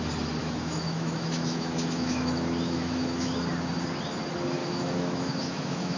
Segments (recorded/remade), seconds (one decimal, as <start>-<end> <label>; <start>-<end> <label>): 0.0-0.4 recorded; 0.4-3.4 remade; 3.4-4.6 recorded; 4.6-6.0 remade